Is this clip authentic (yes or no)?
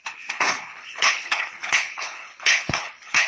no